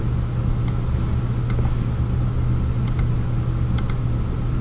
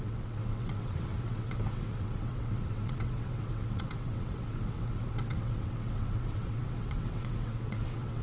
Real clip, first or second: first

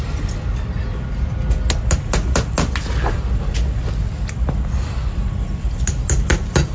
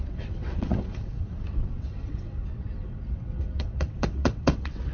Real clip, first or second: first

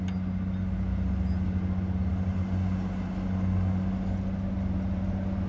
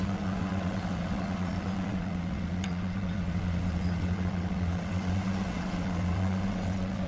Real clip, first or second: first